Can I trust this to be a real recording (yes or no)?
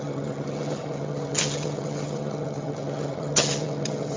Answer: no